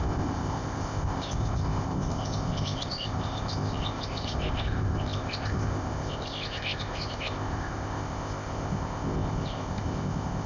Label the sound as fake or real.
fake